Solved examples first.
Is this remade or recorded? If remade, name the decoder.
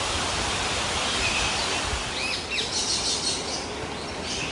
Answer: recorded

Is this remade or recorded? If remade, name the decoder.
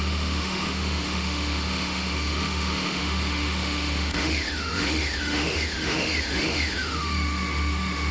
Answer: remade, autoencoder, DAC-VAE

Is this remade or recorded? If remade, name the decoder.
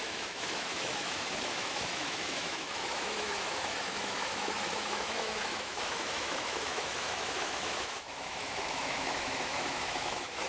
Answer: remade, autoencoder, DAC-VAE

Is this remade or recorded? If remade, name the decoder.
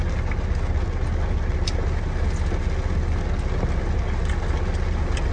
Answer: recorded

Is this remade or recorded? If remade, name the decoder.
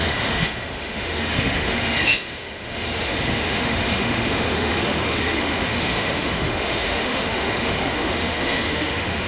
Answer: remade, autoencoder, DAC-VAE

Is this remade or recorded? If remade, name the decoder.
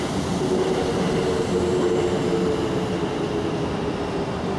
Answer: recorded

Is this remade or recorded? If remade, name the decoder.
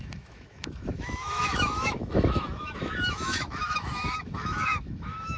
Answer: remade, autoencoder, DAC-VAE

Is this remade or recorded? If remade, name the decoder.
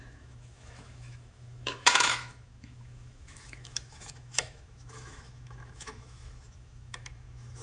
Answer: remade, autoencoder, DAC-VAE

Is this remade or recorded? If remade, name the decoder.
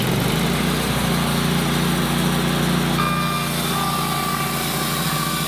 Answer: recorded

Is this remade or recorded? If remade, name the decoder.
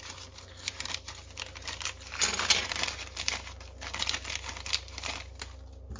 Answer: recorded